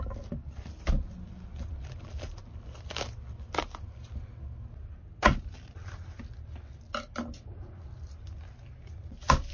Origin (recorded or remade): recorded